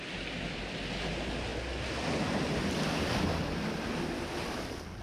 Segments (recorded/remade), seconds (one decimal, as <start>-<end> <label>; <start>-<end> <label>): 0.0-5.0 recorded